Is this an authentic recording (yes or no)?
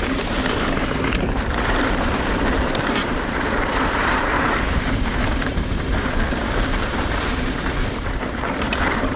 no